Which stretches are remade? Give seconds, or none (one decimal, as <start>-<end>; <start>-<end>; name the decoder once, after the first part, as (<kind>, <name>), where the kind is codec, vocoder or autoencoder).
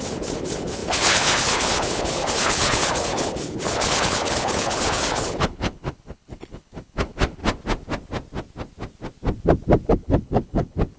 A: 0.0-7.4 (codec, HILCodec); 9.9-11.0